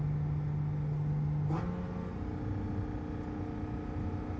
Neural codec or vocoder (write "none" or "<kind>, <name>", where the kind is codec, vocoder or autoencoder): none